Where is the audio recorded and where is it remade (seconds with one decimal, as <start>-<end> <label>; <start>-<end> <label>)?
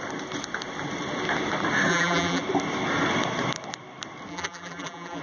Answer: 0.0-1.9 recorded; 1.9-2.4 remade; 2.4-4.3 recorded; 4.3-5.2 remade